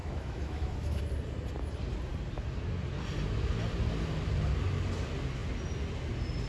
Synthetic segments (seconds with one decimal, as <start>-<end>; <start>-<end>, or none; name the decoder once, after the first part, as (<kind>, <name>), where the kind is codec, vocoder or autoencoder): 0.0-1.0 (autoencoder, DAC-VAE)